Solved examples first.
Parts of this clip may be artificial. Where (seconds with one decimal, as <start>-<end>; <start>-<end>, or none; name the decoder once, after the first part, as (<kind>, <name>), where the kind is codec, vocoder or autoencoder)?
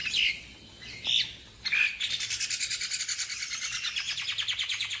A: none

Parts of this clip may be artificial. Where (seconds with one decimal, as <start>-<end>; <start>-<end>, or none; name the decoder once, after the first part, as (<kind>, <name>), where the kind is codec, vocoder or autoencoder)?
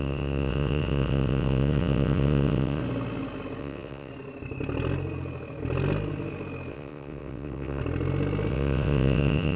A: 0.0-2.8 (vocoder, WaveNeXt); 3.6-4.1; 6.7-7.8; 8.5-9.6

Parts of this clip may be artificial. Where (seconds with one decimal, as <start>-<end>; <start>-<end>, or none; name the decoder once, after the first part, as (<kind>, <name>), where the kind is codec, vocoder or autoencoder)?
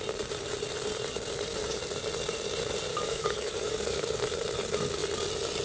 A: 2.9-4.2 (codec, DAC)